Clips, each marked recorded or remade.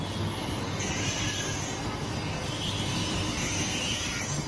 recorded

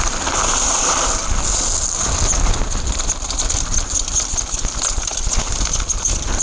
recorded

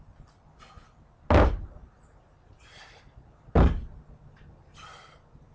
recorded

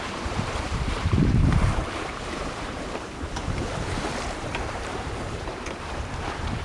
remade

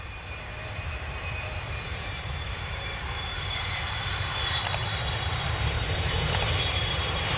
remade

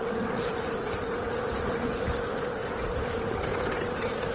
recorded